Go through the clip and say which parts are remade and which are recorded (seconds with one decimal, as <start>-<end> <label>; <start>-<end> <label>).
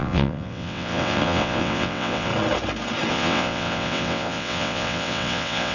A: 0.0-2.3 remade; 2.3-3.1 recorded; 3.1-5.7 remade